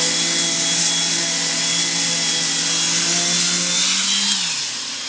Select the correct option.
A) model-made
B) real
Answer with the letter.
B